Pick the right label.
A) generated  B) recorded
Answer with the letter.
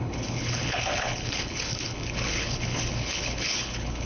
A